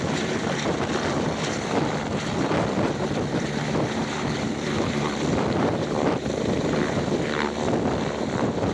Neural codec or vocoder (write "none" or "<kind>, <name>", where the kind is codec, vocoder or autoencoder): vocoder, BigVGAN v2